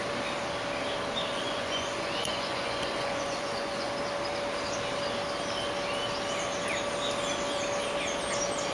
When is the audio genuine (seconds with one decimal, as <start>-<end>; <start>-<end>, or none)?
0.0-1.3; 3.9-8.7